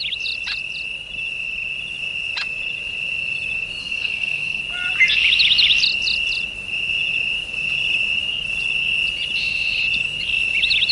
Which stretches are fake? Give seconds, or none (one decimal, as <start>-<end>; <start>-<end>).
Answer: 3.8-4.6